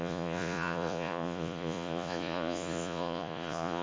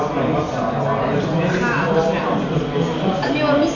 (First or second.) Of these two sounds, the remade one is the first